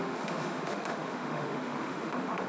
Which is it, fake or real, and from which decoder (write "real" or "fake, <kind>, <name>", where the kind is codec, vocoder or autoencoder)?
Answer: fake, autoencoder, DAC-VAE